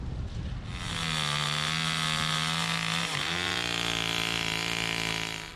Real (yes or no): yes